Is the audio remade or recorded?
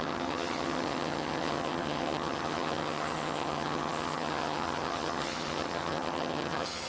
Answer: remade